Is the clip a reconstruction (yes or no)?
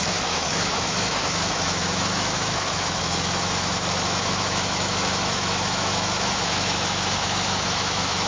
yes